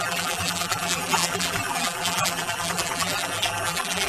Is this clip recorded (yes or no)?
no